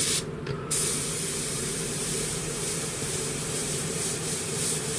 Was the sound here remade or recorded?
remade